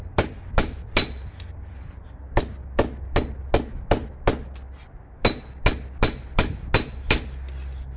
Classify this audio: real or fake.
real